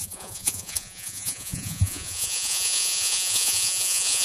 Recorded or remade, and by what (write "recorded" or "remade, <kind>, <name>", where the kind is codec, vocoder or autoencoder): remade, vocoder, Vocos